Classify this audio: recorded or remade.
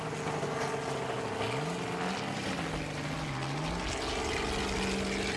recorded